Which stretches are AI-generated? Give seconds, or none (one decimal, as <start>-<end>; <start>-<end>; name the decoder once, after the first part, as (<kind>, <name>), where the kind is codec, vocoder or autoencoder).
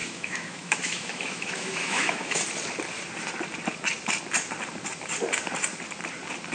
0.0-2.4 (autoencoder, DAC-VAE)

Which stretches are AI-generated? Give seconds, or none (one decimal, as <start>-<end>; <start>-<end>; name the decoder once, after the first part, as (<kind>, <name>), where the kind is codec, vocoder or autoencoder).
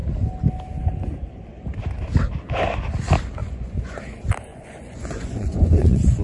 3.4-4.0 (vocoder, Vocos); 4.5-6.2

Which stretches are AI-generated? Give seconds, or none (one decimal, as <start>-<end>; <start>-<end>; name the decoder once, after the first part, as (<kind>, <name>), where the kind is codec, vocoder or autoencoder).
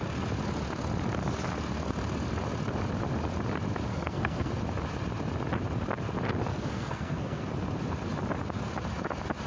3.9-4.5 (codec, SNAC); 6.5-7.5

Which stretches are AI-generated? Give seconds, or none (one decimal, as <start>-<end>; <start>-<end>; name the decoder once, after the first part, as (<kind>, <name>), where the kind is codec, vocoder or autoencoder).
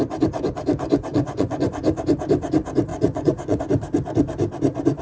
1.1-1.7 (vocoder, Vocos); 2.9-3.6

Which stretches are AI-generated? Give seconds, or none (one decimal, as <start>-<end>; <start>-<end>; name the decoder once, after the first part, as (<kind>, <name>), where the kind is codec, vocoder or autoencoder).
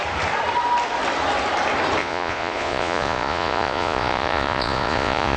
2.0-5.4 (vocoder, Vocos)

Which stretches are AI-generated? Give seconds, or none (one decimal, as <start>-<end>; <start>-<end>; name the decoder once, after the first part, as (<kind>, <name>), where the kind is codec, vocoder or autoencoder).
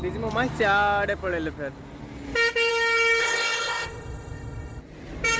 3.2-4.8 (codec, ZipCodec)